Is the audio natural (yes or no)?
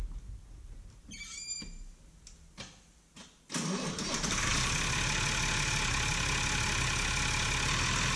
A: yes